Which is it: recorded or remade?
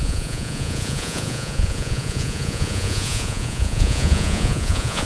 remade